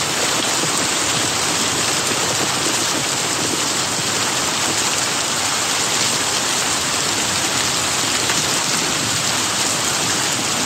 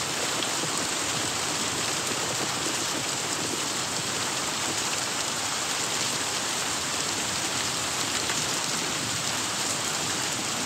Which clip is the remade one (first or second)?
second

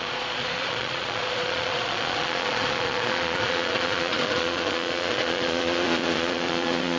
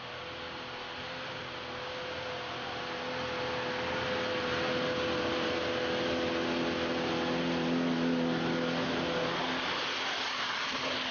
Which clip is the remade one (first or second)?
first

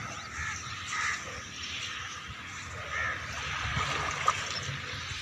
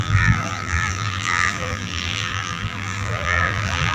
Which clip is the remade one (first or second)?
second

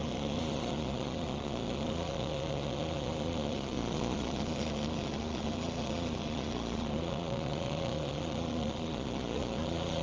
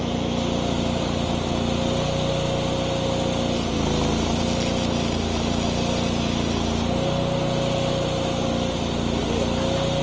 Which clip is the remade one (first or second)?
first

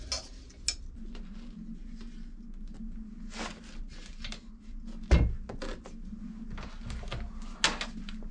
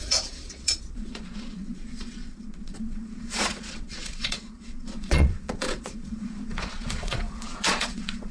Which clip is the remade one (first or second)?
second